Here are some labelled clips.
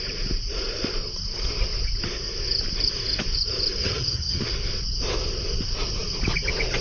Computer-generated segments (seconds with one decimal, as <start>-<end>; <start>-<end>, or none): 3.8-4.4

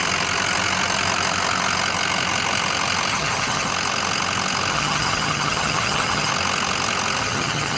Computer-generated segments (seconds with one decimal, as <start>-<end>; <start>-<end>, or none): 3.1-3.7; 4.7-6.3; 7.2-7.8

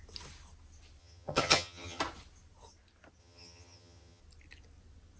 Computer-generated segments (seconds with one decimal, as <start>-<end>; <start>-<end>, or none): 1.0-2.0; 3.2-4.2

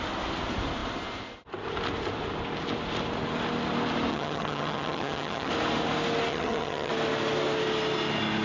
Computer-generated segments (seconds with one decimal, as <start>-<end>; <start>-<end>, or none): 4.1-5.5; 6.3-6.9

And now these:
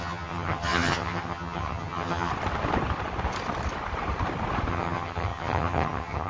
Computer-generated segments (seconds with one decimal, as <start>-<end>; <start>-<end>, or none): 0.0-2.3; 4.7-6.3

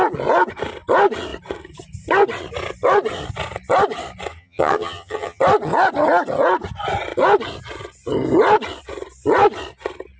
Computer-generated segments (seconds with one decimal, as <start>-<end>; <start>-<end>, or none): 4.3-5.4

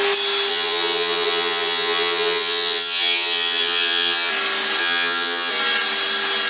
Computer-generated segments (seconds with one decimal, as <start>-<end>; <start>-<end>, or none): 0.5-4.3; 4.8-5.5